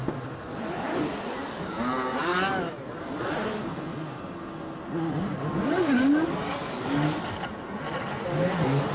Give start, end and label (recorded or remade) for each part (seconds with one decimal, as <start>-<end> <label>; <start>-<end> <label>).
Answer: 0.0-8.9 recorded